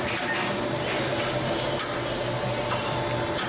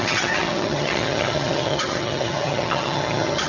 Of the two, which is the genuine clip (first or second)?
first